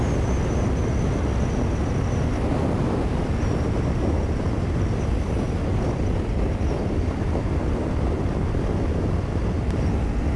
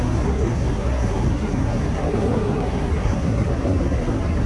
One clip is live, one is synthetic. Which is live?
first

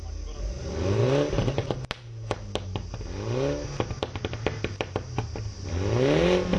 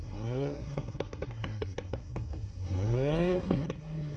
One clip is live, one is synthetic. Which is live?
first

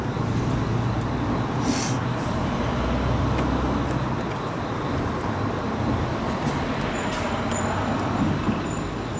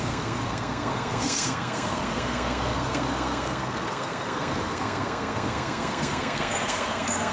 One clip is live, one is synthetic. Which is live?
first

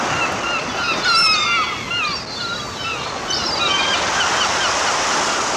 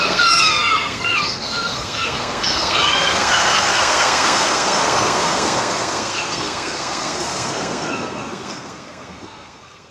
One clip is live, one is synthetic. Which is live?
first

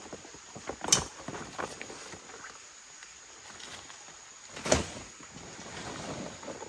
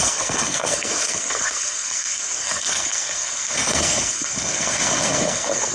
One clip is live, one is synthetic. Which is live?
first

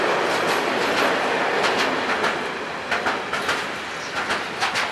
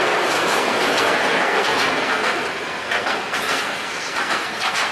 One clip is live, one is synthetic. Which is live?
first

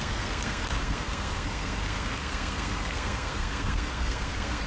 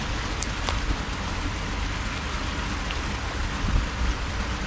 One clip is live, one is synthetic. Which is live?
second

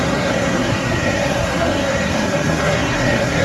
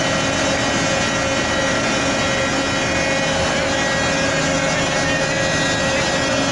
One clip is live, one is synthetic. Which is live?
second